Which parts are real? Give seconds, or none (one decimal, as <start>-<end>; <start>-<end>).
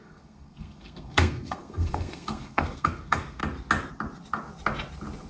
3.4-5.3